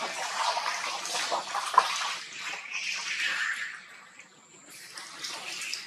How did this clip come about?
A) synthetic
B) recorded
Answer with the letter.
B